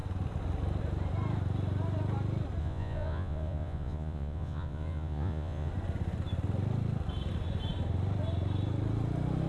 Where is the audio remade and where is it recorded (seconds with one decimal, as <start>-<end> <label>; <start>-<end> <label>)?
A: 0.0-2.6 recorded; 2.6-5.7 remade; 5.7-9.5 recorded